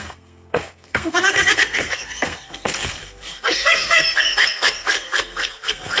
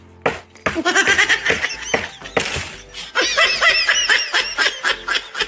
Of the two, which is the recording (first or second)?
second